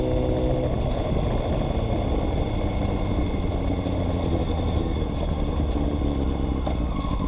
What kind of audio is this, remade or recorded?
recorded